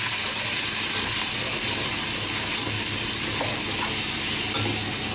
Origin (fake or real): real